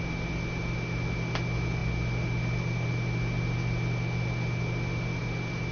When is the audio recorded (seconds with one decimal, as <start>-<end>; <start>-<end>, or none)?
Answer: 0.0-5.7